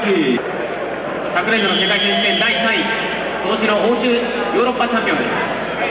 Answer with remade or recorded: recorded